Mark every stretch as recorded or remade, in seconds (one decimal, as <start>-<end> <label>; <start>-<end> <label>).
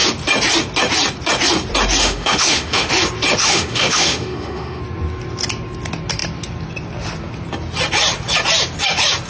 0.0-2.0 recorded; 2.0-2.9 remade; 2.9-3.4 recorded; 3.4-4.8 remade; 4.8-9.3 recorded